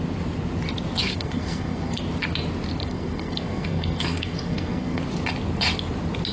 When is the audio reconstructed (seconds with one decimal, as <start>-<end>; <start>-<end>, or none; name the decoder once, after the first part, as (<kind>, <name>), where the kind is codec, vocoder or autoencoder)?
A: 1.1-2.0 (codec, SNAC); 2.8-5.0